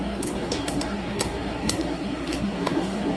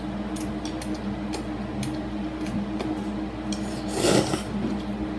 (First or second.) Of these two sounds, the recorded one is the second